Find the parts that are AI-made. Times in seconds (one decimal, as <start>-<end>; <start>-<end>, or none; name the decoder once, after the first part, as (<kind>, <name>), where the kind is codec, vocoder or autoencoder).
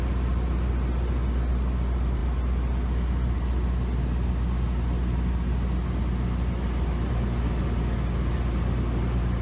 none